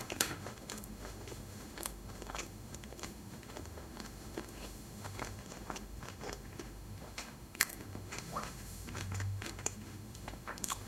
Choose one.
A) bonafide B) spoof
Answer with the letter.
B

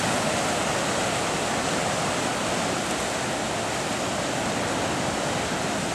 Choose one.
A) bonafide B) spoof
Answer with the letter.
A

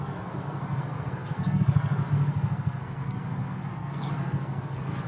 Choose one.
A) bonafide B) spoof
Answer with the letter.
B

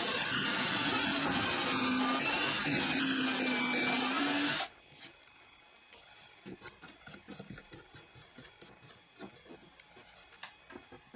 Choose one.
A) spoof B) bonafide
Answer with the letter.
B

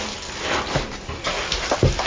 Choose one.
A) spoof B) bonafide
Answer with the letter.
B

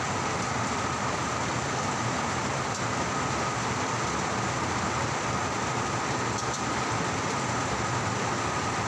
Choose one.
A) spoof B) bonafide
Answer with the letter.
B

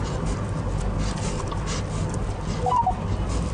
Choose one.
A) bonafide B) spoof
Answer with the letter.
A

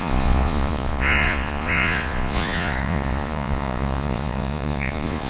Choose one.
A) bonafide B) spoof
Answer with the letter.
B